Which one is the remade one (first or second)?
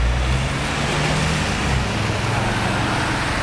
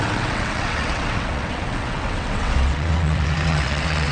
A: second